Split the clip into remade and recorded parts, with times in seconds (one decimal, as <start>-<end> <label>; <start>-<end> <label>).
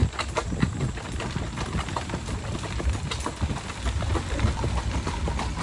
0.0-5.6 recorded